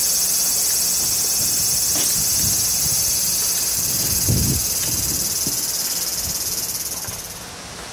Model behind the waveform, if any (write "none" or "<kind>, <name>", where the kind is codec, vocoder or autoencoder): none